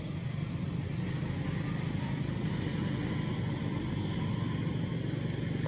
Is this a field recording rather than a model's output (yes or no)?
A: yes